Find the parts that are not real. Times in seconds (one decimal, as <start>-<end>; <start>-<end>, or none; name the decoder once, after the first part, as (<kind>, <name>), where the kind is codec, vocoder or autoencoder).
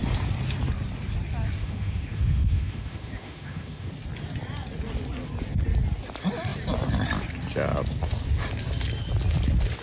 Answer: 1.6-3.9 (autoencoder, DAC-VAE)